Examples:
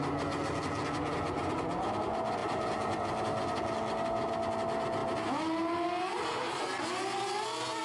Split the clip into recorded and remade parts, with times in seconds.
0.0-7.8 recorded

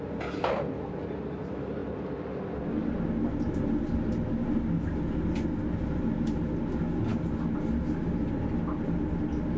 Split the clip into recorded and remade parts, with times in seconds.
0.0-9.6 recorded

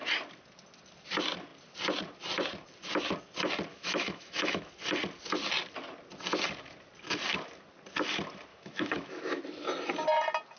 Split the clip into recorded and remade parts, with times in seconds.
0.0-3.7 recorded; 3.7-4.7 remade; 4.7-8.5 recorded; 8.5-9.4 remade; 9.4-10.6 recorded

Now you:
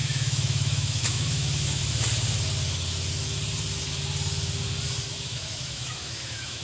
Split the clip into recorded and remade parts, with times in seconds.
0.0-1.8 remade; 1.8-5.2 recorded; 5.2-6.6 remade